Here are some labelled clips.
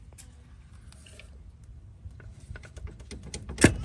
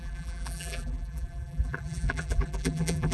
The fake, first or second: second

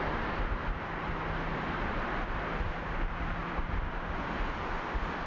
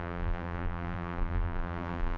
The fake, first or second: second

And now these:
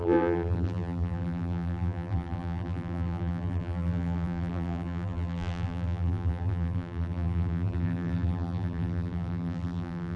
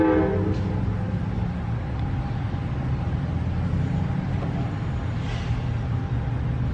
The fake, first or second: first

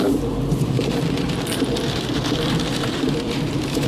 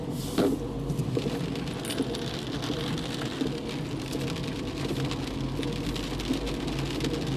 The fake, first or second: first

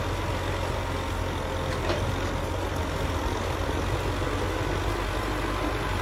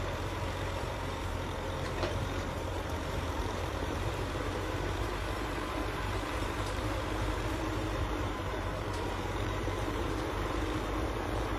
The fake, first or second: second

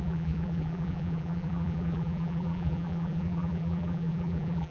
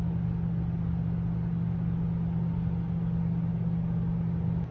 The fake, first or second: first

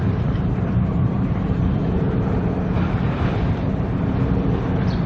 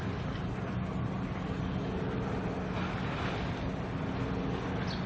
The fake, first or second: first